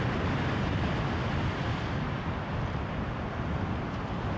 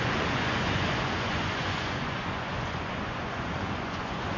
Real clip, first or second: first